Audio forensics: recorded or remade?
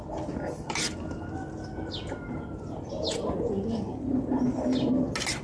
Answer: recorded